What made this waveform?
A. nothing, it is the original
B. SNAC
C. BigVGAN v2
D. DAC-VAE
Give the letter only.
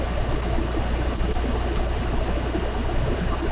A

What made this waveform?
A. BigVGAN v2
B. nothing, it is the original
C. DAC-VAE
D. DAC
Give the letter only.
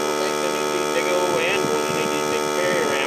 B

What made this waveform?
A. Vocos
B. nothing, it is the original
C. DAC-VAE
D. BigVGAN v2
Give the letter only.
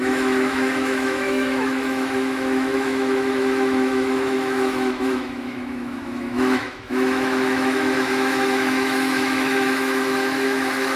C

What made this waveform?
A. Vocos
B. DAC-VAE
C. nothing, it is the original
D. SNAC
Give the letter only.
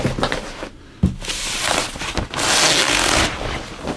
C